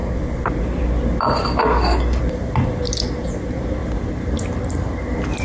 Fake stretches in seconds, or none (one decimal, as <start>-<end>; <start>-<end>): 1.6-2.2